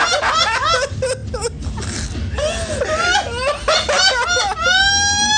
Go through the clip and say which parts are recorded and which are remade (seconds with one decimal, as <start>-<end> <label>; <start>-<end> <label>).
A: 0.0-5.4 recorded

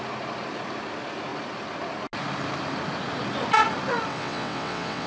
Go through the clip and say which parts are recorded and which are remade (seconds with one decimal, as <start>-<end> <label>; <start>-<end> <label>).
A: 0.0-4.1 recorded; 4.1-5.1 remade

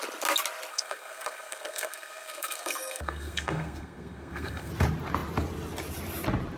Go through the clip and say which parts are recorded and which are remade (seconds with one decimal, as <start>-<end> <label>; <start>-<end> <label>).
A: 0.0-0.7 recorded; 0.7-4.7 remade; 4.7-6.6 recorded

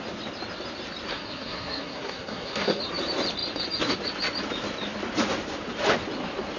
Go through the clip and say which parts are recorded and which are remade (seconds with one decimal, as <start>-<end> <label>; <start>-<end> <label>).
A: 0.0-1.1 recorded; 1.1-2.8 remade; 2.8-6.6 recorded

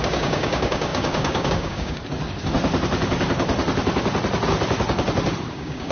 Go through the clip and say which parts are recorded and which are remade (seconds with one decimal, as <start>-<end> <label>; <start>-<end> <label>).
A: 0.0-2.0 remade; 2.0-5.5 recorded; 5.5-5.9 remade